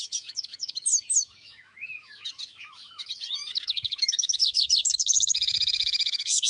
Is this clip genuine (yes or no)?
no